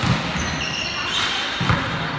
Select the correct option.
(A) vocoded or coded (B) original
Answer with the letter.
B